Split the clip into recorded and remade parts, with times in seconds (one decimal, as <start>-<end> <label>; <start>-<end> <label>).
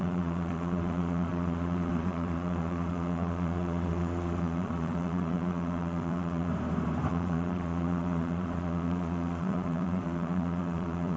0.0-6.5 remade; 6.5-7.1 recorded; 7.1-11.2 remade